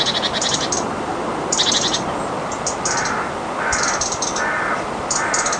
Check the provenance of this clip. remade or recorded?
remade